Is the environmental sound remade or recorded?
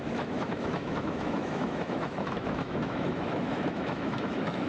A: remade